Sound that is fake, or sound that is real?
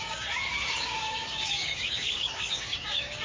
fake